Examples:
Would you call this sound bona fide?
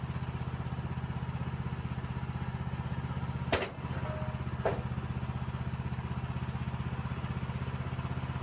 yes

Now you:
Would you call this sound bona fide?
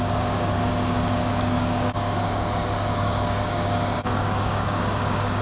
no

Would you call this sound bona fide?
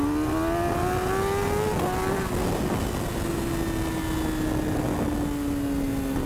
yes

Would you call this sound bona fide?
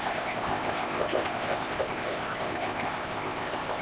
no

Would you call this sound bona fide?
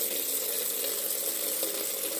yes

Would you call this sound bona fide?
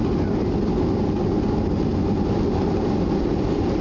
yes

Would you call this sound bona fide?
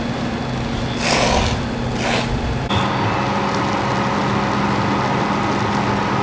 yes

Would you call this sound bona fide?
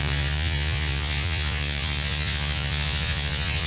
no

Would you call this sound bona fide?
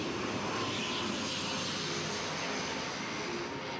yes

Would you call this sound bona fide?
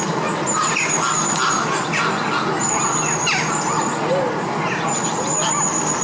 yes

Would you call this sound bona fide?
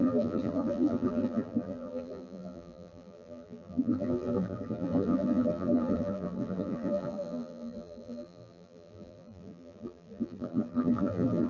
no